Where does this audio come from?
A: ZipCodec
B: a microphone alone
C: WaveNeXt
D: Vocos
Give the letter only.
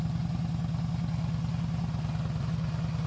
B